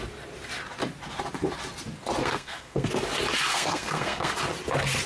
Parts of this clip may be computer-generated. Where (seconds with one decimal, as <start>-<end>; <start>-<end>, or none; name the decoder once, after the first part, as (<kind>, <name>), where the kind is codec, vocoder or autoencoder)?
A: 2.2-2.9 (codec, SNAC); 3.5-4.3